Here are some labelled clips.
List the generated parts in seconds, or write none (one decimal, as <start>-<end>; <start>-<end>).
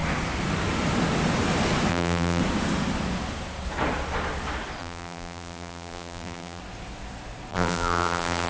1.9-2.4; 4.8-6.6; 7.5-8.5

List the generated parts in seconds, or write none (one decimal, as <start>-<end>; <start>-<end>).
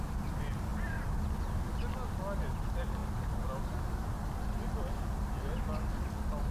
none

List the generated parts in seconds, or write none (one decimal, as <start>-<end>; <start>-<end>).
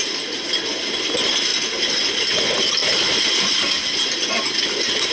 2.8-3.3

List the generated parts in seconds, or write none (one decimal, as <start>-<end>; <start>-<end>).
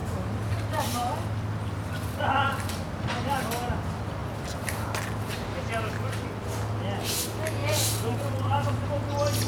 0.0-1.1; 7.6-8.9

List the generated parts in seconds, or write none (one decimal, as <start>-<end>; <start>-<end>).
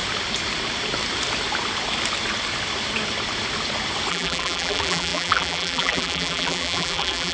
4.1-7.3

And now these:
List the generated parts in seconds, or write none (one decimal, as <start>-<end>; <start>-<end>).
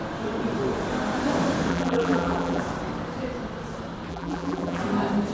1.7-2.6; 4.1-4.8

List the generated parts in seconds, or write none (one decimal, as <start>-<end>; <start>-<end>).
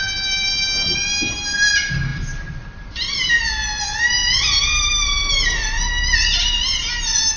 2.1-3.4; 4.2-5.8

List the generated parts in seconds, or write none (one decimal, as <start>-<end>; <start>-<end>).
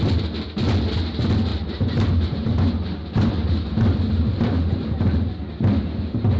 1.5-5.3